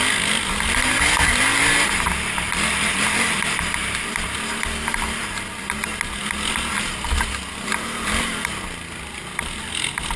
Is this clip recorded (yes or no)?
yes